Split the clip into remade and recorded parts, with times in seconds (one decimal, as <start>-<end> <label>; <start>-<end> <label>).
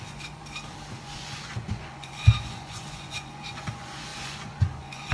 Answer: 0.0-0.4 remade; 0.4-0.9 recorded; 0.9-5.1 remade